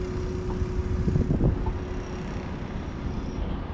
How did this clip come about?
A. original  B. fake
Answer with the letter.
A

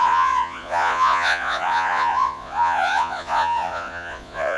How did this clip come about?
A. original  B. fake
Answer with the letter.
B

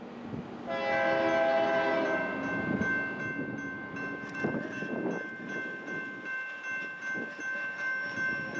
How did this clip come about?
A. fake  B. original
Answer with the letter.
B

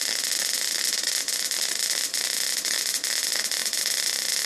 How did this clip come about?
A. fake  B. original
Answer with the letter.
B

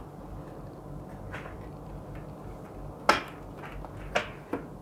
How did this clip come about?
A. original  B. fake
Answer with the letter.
A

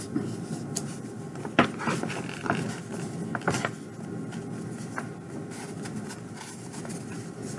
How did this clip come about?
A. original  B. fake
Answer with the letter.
A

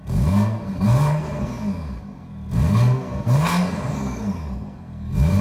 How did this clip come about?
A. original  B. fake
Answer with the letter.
B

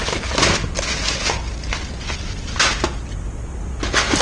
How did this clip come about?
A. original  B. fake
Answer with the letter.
A